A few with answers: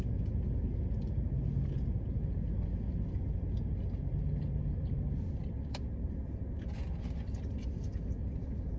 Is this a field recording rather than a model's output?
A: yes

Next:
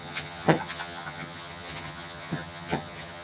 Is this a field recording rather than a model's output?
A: no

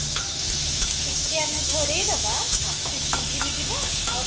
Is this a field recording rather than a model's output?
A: no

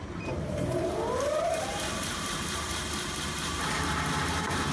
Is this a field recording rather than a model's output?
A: no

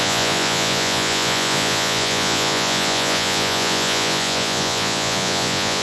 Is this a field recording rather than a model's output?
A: no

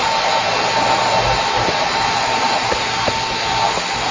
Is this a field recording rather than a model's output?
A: yes